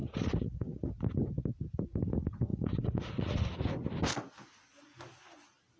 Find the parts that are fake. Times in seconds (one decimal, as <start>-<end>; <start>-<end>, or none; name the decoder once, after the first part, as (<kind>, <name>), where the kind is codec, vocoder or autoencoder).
0.0-0.9 (vocoder, Vocos); 2.5-3.6